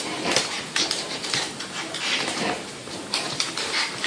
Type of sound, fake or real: fake